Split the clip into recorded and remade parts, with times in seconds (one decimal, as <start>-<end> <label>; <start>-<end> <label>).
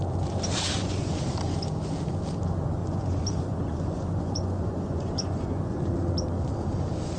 0.0-0.8 recorded; 0.8-1.3 remade; 1.3-2.8 recorded; 2.8-5.9 remade; 5.9-7.2 recorded